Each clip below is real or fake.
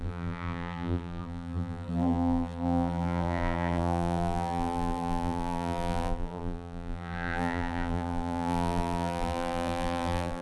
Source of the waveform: fake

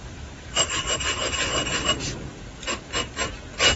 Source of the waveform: real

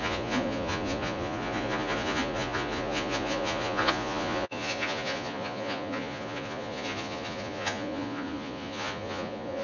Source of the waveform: fake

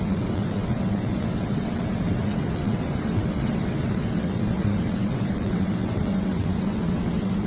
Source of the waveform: fake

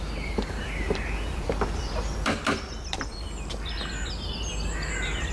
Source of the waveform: fake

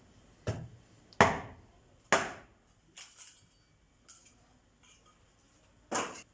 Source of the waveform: real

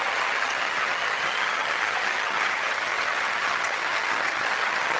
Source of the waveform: fake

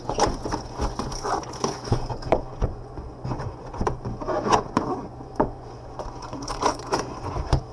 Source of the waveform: fake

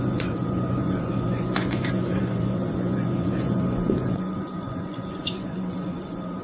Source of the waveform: fake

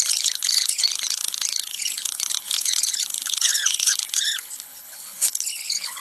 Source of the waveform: fake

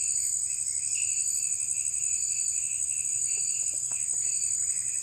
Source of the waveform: real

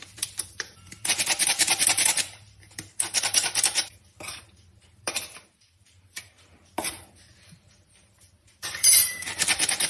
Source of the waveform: fake